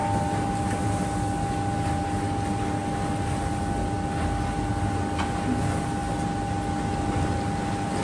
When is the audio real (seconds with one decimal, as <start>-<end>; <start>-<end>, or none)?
0.0-8.0